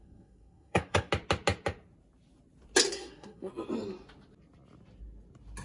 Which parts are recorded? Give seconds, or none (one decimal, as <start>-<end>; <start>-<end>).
1.1-2.9; 3.5-5.6